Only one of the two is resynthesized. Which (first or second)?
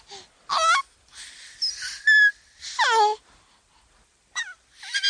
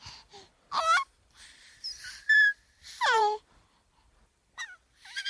second